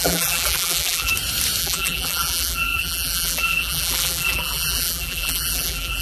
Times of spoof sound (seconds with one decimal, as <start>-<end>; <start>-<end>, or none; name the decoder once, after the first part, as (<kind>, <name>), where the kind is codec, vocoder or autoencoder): 0.0-1.1 (vocoder, BigVGAN v2); 1.6-6.0